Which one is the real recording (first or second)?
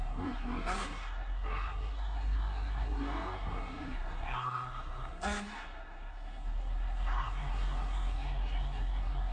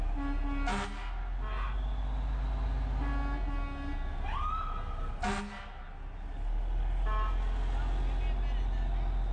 second